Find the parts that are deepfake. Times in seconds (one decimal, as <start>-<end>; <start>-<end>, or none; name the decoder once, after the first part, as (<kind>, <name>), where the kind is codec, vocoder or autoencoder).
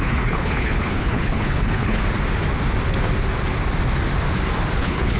0.0-2.0 (codec, HILCodec); 4.8-5.2